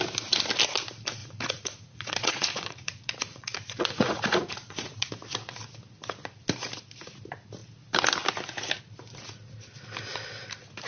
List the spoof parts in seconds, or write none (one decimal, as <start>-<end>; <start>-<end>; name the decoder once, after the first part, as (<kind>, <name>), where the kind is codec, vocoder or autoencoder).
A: 1.2-5.1 (vocoder, Vocos)